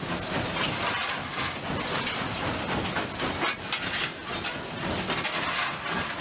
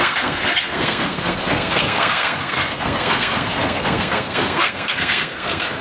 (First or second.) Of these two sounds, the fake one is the second